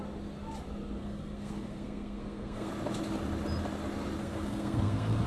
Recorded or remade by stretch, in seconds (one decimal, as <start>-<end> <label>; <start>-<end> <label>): 0.0-1.0 recorded; 1.0-2.7 remade; 2.7-4.2 recorded; 4.2-5.3 remade